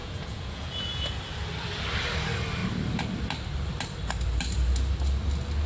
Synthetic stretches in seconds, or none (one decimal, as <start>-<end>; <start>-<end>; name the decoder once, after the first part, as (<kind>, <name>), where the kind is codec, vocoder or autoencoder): 0.0-1.1 (vocoder, Vocos)